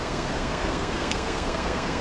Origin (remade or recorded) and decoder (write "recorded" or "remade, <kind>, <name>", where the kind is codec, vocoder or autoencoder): remade, codec, SNAC